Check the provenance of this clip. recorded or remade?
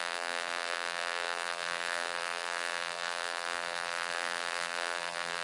remade